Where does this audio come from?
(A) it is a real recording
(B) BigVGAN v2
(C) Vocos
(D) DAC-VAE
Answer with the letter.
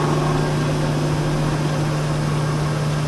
A